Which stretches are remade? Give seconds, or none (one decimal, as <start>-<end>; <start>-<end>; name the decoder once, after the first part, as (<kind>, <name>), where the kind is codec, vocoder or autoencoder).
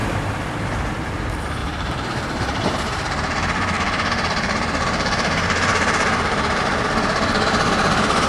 1.6-6.6 (vocoder, BigVGAN v2)